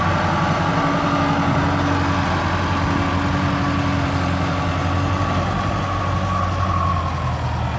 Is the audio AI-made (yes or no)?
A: no